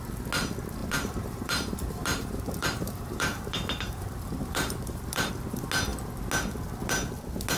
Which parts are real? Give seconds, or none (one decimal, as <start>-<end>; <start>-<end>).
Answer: 0.0-0.8; 5.3-7.6